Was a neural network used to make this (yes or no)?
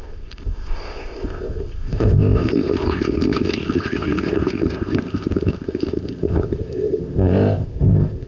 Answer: yes